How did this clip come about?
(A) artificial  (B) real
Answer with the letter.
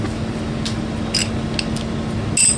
B